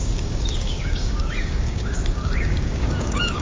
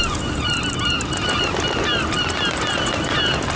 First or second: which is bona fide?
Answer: second